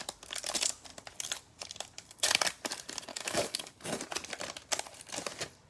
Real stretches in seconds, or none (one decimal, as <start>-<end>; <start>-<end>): 0.0-3.1; 3.7-5.7